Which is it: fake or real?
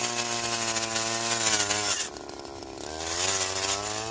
real